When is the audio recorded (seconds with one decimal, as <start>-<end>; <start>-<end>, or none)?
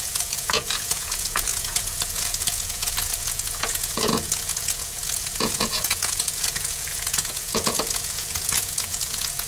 none